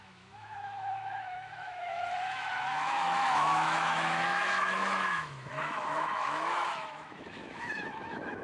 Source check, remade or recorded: remade